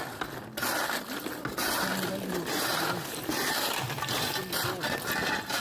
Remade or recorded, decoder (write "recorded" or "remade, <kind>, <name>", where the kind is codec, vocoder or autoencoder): recorded